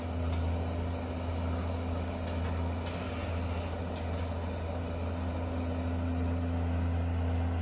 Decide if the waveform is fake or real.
real